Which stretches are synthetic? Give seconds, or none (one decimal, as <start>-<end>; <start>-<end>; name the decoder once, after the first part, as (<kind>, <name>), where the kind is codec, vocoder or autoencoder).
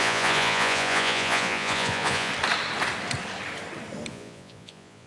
0.0-2.3 (vocoder, Vocos); 4.1-5.1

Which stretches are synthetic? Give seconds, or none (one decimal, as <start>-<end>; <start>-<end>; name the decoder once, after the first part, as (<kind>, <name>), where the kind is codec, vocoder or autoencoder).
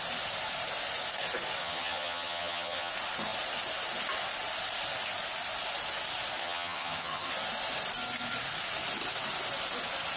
1.6-2.9 (vocoder, HiFi-GAN); 6.4-7.3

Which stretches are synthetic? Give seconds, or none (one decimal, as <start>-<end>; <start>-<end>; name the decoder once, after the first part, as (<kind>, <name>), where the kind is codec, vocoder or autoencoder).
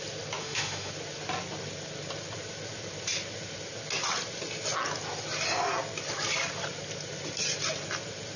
0.4-0.9 (autoencoder, DAC-VAE)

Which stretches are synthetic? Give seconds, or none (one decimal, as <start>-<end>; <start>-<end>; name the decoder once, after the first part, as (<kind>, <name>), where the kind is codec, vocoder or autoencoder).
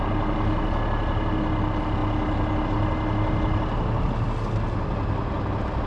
none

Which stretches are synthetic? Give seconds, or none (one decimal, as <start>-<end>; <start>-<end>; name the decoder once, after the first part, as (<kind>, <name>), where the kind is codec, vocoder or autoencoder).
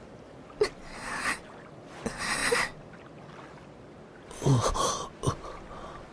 none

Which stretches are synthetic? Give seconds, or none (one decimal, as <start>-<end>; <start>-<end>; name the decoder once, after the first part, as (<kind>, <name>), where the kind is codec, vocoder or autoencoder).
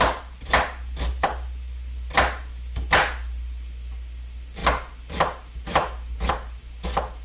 none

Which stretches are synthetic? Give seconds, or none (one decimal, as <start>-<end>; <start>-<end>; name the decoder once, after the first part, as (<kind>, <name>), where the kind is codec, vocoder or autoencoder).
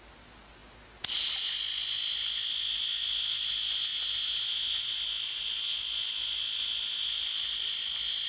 none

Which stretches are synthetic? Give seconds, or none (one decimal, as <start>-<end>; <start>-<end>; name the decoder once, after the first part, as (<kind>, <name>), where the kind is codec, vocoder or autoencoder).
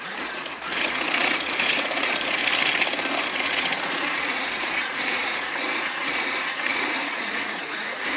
0.0-2.4 (vocoder, Vocos); 3.3-8.2